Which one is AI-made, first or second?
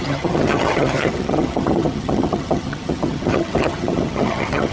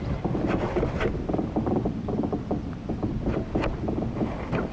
first